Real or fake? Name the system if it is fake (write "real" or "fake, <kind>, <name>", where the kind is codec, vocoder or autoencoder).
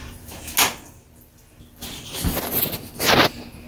real